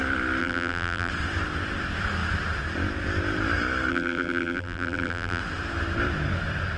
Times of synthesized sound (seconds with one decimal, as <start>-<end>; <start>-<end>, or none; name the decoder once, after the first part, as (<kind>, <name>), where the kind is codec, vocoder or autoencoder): 0.4-1.1 (vocoder, BigVGAN v2); 3.9-5.4